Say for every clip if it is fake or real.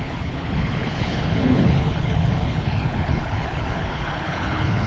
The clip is fake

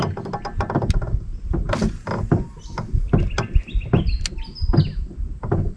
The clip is real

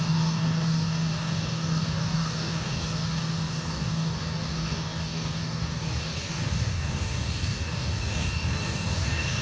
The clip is fake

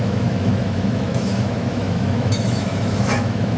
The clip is fake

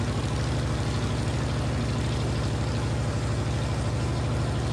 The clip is real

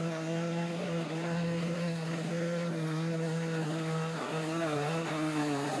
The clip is fake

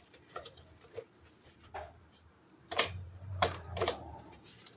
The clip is fake